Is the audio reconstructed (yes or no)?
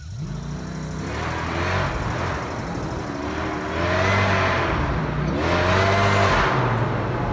no